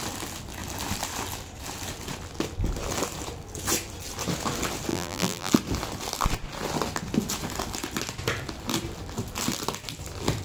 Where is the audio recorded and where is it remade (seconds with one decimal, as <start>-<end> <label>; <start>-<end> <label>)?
0.0-4.9 recorded; 4.9-5.5 remade; 5.5-10.4 recorded